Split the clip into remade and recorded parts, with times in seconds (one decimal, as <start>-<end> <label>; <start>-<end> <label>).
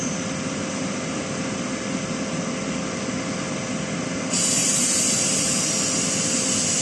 0.0-4.6 recorded; 4.6-5.7 remade; 5.7-6.8 recorded